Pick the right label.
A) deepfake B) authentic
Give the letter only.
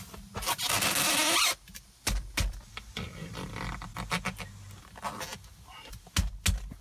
B